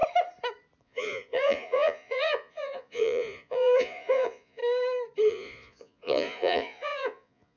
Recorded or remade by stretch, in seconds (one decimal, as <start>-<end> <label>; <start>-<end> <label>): 0.0-0.8 recorded; 0.8-4.6 remade; 4.6-5.3 recorded; 5.3-7.6 remade